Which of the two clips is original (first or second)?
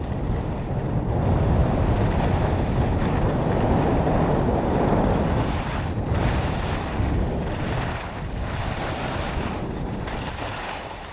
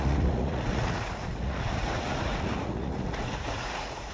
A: first